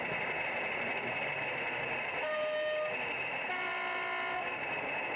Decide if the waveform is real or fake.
real